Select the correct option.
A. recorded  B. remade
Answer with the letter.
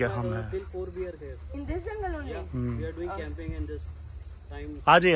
A